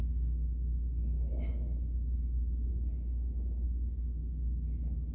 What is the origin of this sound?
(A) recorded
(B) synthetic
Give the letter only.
A